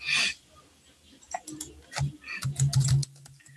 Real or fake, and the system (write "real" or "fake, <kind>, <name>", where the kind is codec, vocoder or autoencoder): real